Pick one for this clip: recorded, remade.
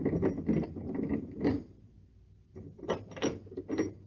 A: recorded